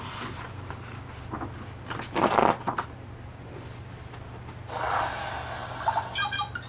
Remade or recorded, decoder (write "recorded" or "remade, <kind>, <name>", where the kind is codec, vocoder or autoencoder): recorded